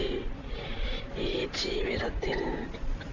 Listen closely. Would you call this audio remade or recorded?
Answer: recorded